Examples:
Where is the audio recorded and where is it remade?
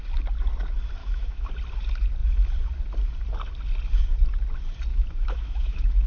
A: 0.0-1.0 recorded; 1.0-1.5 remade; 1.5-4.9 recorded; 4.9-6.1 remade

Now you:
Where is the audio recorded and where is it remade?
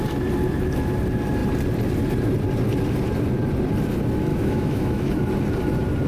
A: 0.0-4.3 recorded; 4.3-5.1 remade; 5.1-6.1 recorded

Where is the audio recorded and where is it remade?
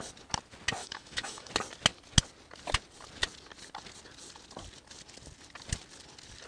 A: 0.0-0.8 recorded; 0.8-1.5 remade; 1.5-6.5 recorded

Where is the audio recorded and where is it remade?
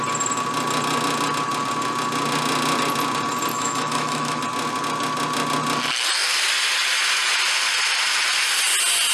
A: 0.0-3.5 recorded; 3.5-4.4 remade; 4.4-9.1 recorded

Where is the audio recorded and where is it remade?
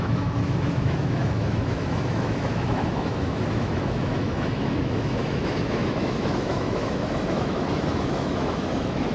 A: 0.0-9.1 remade